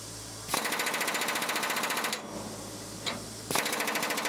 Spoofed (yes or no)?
no